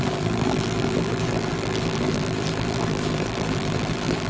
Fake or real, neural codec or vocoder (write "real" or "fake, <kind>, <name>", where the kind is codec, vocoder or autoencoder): fake, vocoder, BigVGAN v2